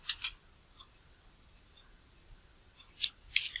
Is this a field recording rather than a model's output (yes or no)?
yes